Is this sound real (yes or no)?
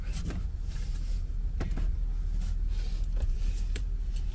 yes